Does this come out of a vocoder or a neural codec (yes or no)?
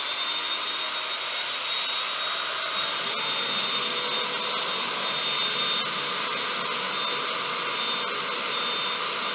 no